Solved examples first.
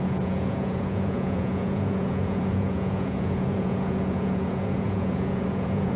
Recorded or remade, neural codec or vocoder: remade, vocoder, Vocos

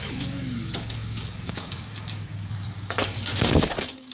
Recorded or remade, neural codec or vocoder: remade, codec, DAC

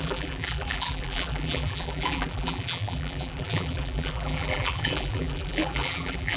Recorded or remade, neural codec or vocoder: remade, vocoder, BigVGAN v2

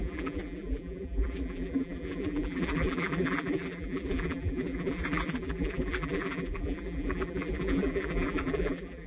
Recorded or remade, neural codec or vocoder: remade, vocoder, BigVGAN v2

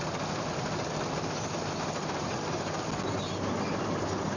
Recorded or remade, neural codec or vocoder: recorded